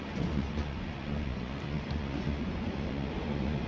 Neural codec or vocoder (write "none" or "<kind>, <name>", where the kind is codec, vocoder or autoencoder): vocoder, Vocos